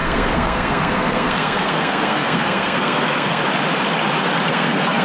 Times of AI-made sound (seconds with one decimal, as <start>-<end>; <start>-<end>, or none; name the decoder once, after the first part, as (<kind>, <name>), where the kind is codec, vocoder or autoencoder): 0.0-3.4 (codec, SNAC); 4.5-5.0